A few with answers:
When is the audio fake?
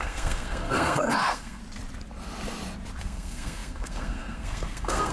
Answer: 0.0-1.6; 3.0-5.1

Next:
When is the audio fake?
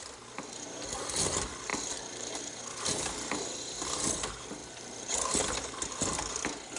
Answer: 1.7-2.4; 4.6-5.3